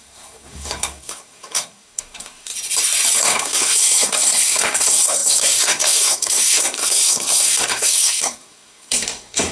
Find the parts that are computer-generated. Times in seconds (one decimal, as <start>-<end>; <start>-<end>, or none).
0.0-2.5; 3.2-9.5